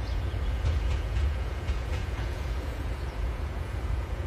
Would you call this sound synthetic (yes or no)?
yes